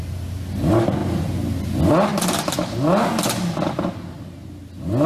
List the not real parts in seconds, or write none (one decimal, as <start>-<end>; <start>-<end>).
none